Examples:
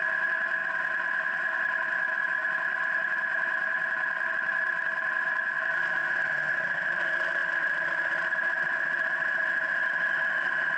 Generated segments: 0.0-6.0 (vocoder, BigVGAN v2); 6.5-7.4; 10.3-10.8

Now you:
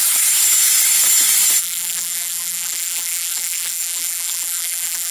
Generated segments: 1.6-5.1 (vocoder, BigVGAN v2)

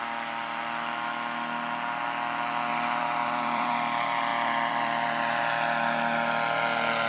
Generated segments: 2.7-3.7 (vocoder, BigVGAN v2); 4.3-5.4

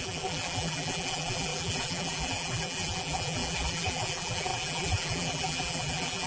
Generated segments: 0.0-6.3 (vocoder, BigVGAN v2)

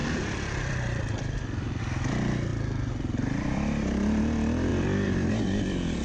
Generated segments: 0.0-1.8 (vocoder, BigVGAN v2); 2.5-4.2; 4.7-5.3

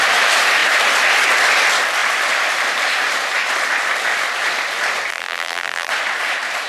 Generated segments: 5.1-5.9 (vocoder, BigVGAN v2)

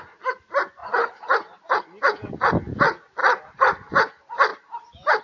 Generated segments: 0.8-1.8 (vocoder, BigVGAN v2); 3.2-3.9; 4.5-5.2

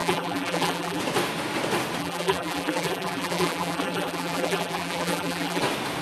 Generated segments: 0.0-1.0 (vocoder, BigVGAN v2); 2.0-5.6